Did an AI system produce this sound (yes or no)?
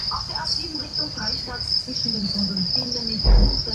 no